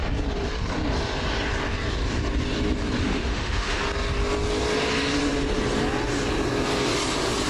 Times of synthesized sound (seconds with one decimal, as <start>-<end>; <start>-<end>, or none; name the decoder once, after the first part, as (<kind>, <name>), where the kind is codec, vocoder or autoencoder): 3.0-3.8 (autoencoder, DAC-VAE)